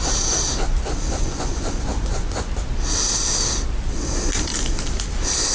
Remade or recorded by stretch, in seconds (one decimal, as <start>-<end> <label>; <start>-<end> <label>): 0.0-1.2 recorded; 1.2-2.5 remade; 2.5-5.5 recorded

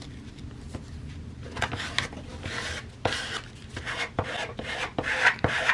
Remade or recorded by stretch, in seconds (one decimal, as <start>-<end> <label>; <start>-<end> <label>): 0.0-5.7 recorded

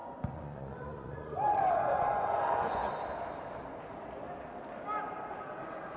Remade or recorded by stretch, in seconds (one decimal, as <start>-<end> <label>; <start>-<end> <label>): 0.0-2.9 remade; 2.9-6.0 recorded

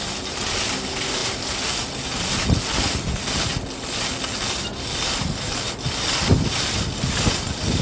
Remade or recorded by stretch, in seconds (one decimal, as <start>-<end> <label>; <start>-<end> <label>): 0.0-7.8 recorded